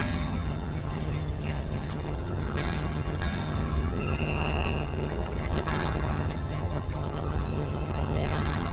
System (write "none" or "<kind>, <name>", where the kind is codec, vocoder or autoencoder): vocoder, HiFi-GAN